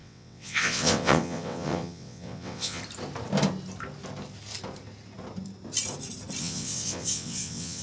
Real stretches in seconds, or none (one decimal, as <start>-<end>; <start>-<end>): 2.8-6.4